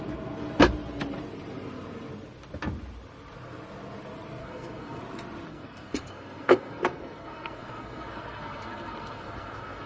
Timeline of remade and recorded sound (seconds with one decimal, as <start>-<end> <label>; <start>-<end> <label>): 0.0-4.4 recorded; 4.4-5.0 remade; 5.0-5.5 recorded; 5.5-9.9 remade